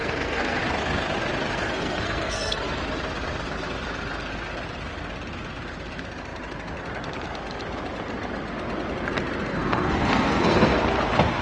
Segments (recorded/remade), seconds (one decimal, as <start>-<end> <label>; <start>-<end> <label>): 0.0-0.6 remade; 0.6-1.5 recorded; 1.5-2.8 remade; 2.8-9.5 recorded; 9.5-10.8 remade; 10.8-11.4 recorded